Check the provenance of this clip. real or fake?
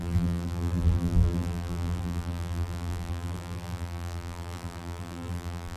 fake